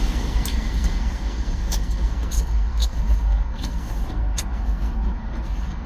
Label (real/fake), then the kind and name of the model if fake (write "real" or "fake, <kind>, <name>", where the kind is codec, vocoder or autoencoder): fake, codec, SNAC